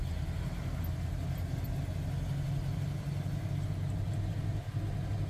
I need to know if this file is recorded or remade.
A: recorded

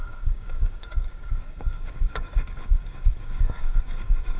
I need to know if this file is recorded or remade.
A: remade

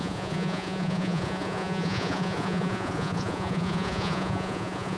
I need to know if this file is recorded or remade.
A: remade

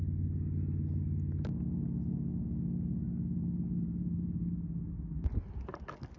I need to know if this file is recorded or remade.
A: recorded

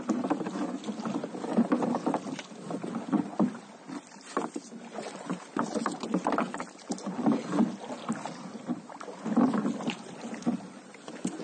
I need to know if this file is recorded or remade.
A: recorded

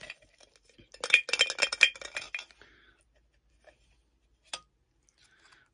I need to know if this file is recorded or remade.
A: recorded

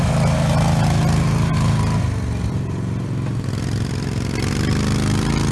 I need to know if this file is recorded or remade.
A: recorded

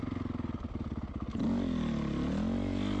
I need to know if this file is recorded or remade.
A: recorded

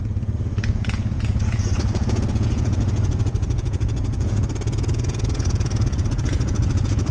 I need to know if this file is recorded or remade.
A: remade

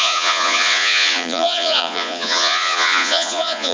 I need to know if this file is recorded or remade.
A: remade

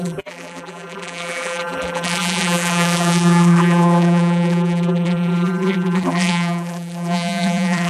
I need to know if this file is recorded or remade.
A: remade